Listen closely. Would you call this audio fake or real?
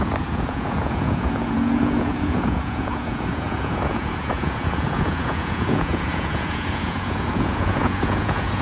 fake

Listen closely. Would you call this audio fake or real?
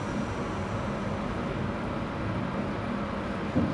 real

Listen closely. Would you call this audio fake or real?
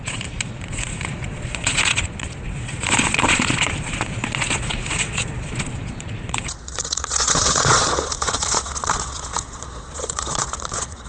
fake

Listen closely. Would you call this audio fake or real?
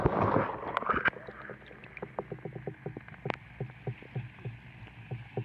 real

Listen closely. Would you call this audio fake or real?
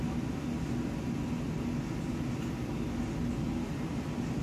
real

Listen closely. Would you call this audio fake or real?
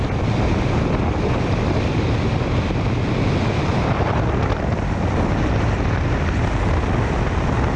real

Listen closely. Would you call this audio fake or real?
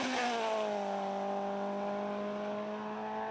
real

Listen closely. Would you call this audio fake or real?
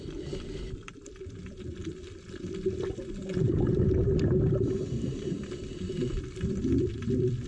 fake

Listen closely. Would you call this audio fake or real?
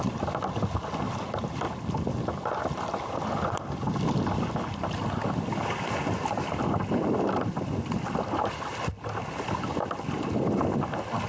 real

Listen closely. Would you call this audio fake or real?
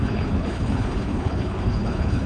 fake